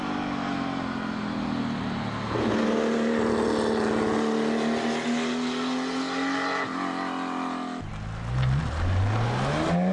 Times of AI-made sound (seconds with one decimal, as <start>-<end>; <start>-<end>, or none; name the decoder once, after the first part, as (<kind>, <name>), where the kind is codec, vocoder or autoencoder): none